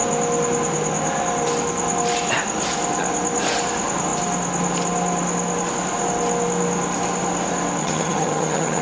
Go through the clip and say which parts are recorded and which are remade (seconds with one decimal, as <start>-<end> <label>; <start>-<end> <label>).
0.0-7.8 recorded; 7.8-8.8 remade